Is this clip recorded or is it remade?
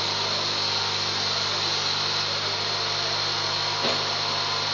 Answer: recorded